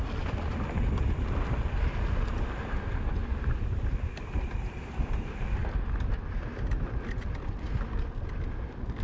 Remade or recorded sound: recorded